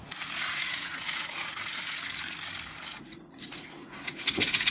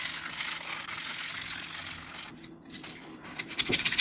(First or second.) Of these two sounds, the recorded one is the second